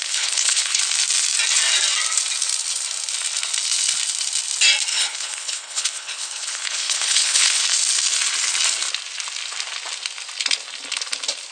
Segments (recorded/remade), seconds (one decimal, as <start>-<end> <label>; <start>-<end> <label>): 0.0-0.8 remade; 0.8-4.9 recorded; 4.9-7.6 remade; 7.6-11.5 recorded